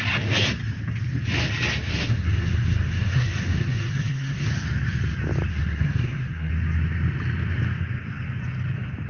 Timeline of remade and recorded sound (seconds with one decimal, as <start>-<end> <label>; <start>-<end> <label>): 0.0-1.9 recorded; 1.9-4.5 remade; 4.5-5.5 recorded; 5.5-6.5 remade; 6.5-9.1 recorded